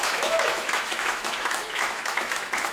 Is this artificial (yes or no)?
yes